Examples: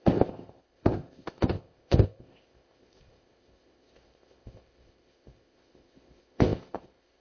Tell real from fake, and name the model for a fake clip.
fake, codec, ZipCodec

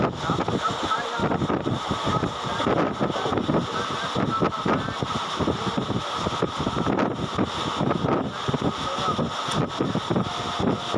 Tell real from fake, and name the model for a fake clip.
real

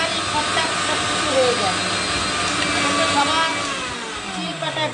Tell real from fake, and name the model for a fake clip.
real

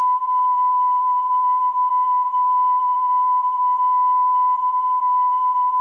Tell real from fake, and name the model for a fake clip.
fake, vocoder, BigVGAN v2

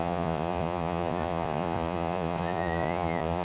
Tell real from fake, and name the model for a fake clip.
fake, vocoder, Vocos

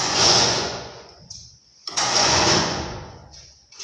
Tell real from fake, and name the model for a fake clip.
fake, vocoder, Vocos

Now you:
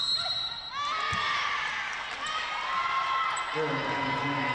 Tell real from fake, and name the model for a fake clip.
real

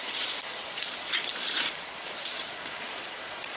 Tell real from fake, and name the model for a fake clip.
fake, vocoder, Vocos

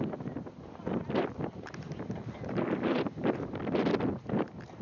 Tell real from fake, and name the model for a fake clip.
real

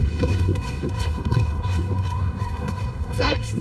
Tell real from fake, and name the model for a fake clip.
fake, codec, SNAC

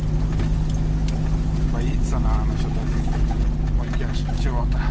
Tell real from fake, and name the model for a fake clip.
real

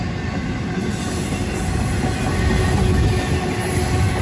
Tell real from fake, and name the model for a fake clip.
real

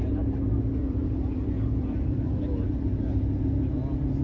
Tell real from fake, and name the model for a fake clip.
real